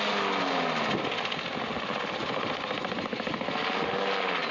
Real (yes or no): yes